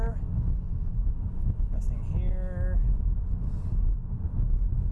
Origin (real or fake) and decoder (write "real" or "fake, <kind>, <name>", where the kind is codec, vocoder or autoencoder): real